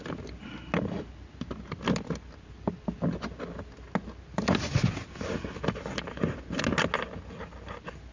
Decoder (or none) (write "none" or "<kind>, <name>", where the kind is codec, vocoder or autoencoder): none